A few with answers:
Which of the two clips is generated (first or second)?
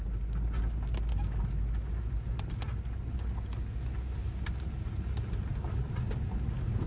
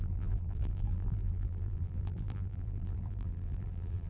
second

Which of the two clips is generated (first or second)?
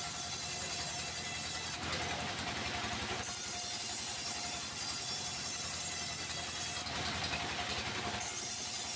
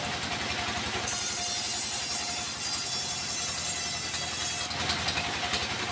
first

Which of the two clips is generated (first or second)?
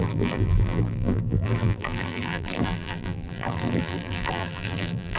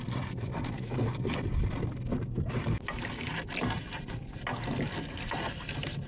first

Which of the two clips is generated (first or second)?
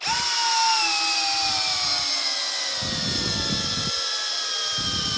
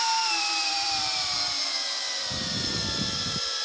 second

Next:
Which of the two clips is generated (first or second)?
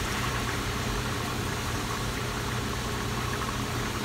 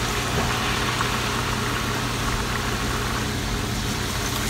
first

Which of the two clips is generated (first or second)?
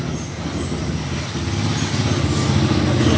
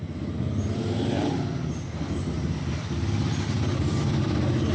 second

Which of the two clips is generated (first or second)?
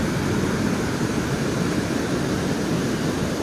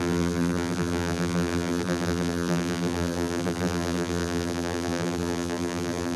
second